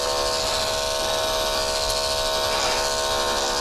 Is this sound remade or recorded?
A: recorded